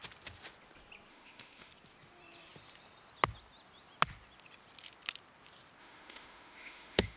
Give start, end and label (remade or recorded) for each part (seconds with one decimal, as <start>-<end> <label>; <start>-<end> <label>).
0.0-1.1 recorded; 1.1-1.7 remade; 1.7-5.8 recorded; 5.8-7.2 remade